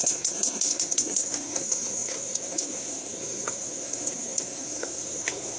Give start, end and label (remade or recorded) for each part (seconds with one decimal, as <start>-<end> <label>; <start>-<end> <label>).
0.0-5.6 remade